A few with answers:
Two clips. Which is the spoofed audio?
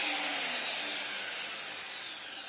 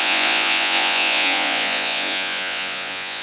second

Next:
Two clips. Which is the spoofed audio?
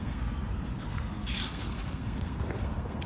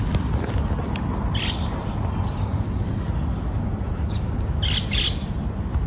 first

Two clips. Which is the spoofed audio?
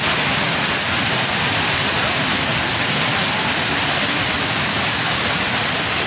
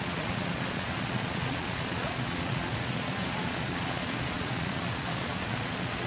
second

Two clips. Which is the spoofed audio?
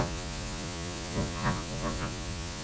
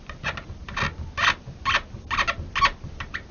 first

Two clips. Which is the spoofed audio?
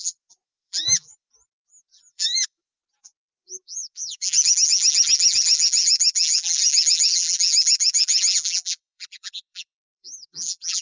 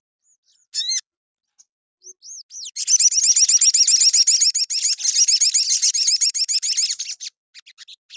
first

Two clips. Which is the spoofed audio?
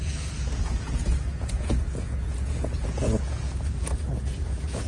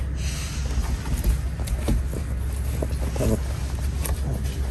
first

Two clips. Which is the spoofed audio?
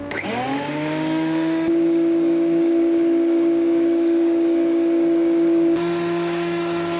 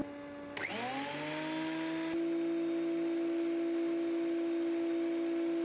first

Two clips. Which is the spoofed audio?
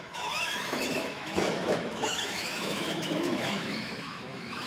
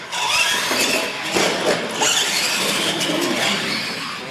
first